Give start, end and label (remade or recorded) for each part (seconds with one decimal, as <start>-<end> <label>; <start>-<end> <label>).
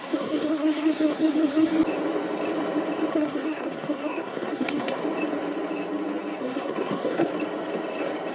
0.0-1.7 remade; 1.7-3.1 recorded; 3.1-5.0 remade; 5.0-6.4 recorded; 6.4-7.3 remade; 7.3-8.3 recorded